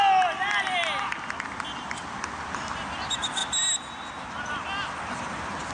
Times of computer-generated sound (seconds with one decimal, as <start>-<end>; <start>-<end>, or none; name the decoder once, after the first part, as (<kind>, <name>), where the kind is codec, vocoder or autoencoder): none